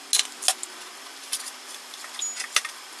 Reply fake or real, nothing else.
real